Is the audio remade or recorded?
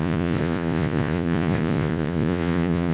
remade